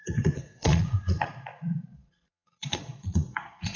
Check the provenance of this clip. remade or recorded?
remade